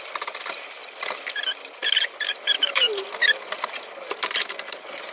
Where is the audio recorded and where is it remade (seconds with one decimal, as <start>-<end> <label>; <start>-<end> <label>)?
0.0-5.1 recorded